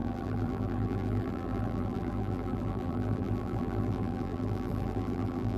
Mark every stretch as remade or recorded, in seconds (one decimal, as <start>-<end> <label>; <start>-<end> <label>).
0.0-5.6 remade